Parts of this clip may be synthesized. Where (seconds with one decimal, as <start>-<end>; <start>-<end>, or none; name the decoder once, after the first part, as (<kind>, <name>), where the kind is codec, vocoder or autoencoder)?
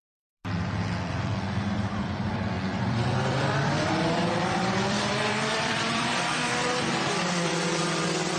0.0-0.4 (vocoder, BigVGAN v2); 1.1-8.4